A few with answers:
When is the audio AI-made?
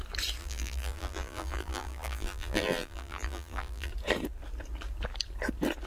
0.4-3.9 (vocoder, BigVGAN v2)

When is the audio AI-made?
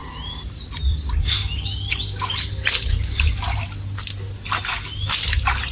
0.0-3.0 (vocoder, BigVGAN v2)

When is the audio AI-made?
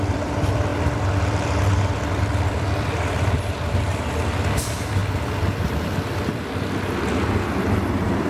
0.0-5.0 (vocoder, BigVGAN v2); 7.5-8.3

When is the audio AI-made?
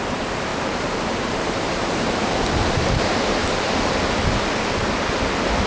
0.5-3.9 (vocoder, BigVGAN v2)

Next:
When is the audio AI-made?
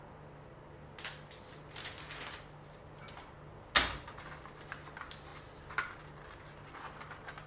none